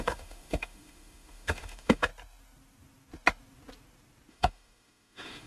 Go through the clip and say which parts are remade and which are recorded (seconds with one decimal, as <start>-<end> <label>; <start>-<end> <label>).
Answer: 0.0-2.1 remade; 2.1-4.3 recorded; 4.3-5.5 remade